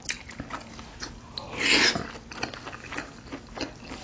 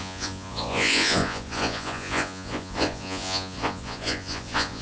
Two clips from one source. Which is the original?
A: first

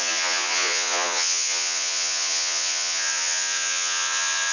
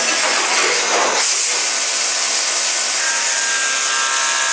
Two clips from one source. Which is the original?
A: second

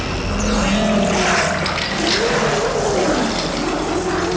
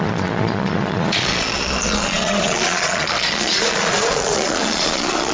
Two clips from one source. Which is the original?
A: first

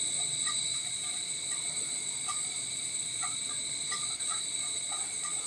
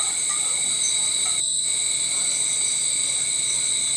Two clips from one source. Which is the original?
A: second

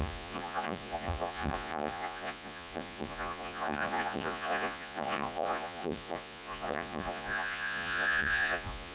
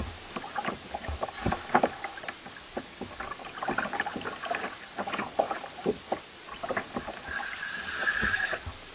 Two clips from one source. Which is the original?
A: second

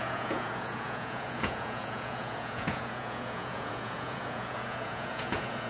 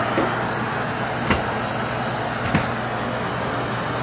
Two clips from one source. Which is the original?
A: second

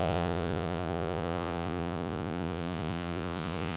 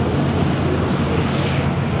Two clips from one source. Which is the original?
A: second